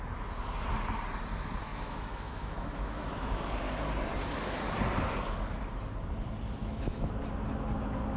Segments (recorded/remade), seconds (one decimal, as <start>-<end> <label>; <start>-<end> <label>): 0.0-1.7 recorded; 1.7-3.3 remade; 3.3-6.6 recorded; 6.6-7.1 remade; 7.1-8.2 recorded